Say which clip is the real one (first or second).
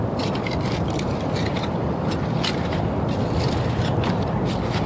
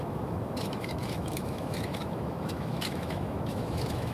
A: first